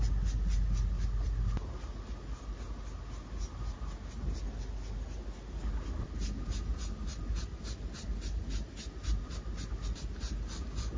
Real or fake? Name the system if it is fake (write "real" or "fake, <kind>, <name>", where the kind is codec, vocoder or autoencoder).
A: real